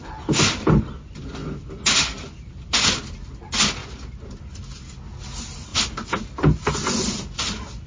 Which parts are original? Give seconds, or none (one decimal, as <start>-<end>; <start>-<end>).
0.0-7.9